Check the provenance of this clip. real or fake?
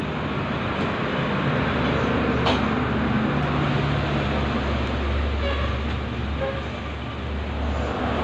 real